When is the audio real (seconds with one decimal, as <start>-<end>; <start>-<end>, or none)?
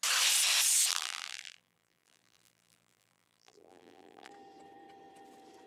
0.0-0.9; 4.3-5.7